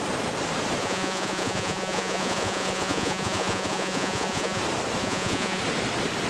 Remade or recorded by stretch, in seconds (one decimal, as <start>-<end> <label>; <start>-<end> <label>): 0.0-0.8 recorded; 0.8-4.6 remade; 4.6-5.0 recorded; 5.0-5.6 remade; 5.6-6.3 recorded